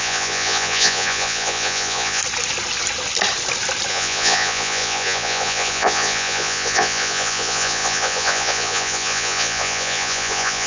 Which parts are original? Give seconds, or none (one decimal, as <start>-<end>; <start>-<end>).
2.2-3.9